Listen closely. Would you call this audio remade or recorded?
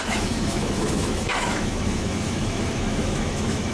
remade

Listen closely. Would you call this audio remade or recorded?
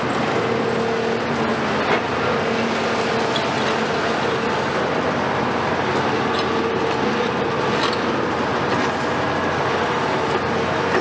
recorded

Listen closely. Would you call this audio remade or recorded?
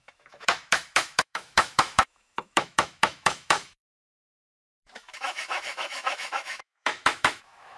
remade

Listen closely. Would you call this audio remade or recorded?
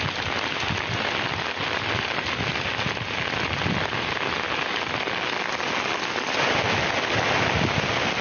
recorded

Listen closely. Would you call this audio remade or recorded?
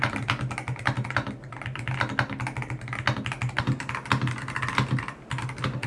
recorded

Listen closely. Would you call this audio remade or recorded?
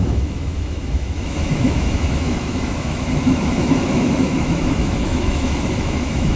remade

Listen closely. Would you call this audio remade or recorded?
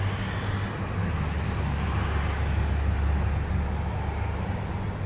recorded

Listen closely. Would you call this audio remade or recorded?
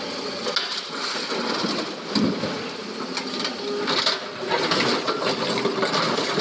recorded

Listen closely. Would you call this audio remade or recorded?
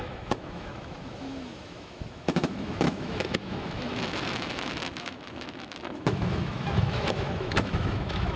remade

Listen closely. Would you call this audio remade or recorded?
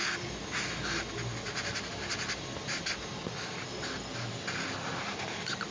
recorded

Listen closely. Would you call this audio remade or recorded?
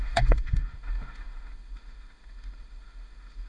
remade